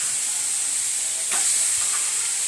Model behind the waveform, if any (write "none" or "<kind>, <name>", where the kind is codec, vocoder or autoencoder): none